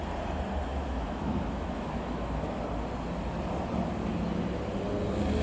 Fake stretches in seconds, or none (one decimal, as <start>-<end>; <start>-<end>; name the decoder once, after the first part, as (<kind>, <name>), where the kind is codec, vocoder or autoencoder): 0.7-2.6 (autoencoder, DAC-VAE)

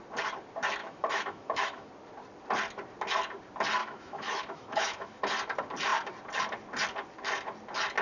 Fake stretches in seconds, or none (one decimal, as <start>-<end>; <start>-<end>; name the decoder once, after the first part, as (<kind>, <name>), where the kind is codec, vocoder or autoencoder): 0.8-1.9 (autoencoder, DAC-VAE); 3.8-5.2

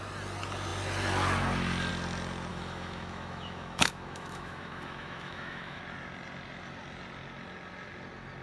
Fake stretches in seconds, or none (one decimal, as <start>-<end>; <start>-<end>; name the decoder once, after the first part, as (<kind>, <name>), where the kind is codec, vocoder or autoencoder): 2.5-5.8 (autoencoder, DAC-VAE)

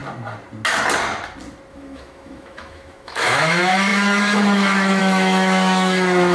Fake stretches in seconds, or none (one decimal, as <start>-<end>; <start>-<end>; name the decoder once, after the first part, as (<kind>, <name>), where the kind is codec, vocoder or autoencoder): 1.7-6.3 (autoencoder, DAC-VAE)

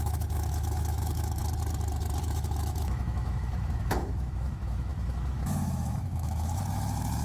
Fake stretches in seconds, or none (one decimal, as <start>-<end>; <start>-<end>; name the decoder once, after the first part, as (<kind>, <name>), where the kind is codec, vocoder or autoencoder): 0.0-1.4 (autoencoder, DAC-VAE); 2.2-7.2

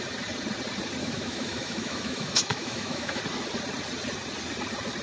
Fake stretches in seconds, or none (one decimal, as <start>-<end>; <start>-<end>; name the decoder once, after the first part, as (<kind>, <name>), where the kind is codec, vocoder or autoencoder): 1.0-3.2 (autoencoder, DAC-VAE)

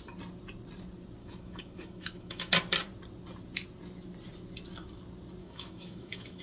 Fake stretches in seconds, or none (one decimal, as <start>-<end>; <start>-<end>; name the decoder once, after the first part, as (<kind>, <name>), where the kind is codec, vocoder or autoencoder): 1.2-2.5 (autoencoder, DAC-VAE); 5.4-6.4

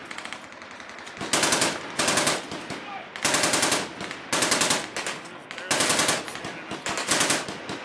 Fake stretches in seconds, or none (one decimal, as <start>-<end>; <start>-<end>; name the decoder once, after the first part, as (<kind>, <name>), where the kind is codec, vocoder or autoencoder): none